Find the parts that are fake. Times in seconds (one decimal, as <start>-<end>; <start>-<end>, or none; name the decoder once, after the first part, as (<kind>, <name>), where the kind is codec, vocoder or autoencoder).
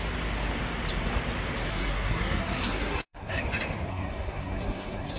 1.7-3.4 (codec, SNAC); 3.9-5.2